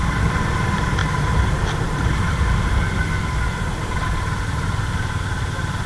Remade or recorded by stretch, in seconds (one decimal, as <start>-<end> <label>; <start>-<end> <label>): 0.0-1.0 recorded; 1.0-2.8 remade; 2.8-3.7 recorded; 3.7-4.8 remade; 4.8-5.9 recorded